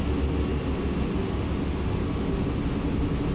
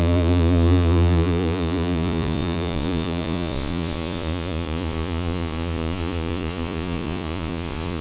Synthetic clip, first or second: second